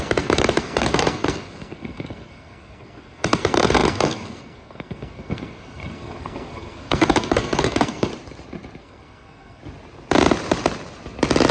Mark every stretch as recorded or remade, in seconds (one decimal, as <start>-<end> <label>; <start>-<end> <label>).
0.0-8.1 remade; 8.1-8.8 recorded; 8.8-9.6 remade; 9.6-11.5 recorded